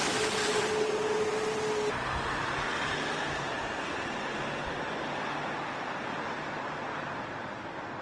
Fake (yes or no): no